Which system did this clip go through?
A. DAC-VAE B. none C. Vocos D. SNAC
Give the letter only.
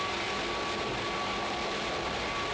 B